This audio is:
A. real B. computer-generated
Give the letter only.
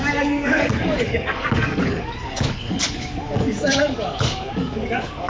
B